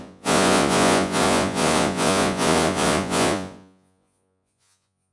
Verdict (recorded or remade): remade